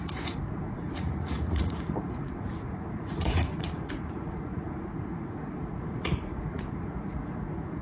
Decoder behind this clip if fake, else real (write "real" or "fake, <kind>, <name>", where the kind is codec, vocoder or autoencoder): fake, vocoder, Vocos